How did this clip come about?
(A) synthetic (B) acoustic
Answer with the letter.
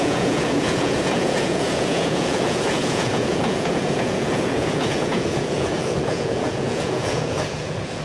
A